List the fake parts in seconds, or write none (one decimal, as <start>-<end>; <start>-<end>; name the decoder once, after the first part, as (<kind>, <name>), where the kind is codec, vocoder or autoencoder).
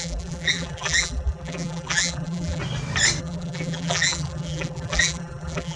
0.0-2.6 (vocoder, BigVGAN v2); 3.2-5.8